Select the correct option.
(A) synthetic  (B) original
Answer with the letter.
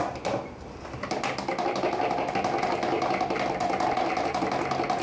B